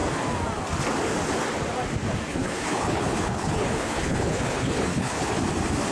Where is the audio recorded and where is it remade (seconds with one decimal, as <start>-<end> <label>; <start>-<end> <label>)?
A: 0.0-2.3 recorded; 2.3-5.3 remade; 5.3-5.9 recorded